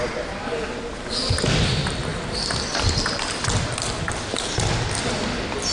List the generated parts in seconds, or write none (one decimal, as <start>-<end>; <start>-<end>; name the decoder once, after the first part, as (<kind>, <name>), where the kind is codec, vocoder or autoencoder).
none